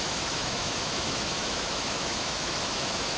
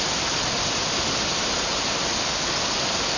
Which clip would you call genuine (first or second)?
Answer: second